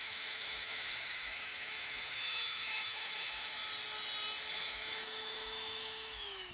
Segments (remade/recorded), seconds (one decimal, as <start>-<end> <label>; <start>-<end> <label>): 0.0-3.6 remade; 3.6-4.5 recorded; 4.5-6.5 remade